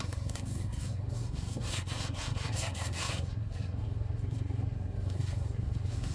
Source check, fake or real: fake